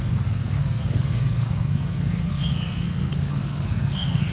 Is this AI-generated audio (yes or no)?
yes